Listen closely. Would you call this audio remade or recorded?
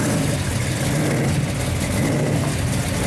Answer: recorded